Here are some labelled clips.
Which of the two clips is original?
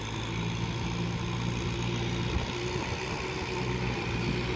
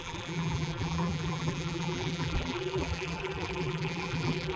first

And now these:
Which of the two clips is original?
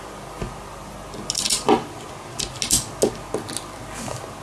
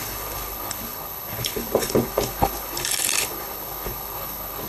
first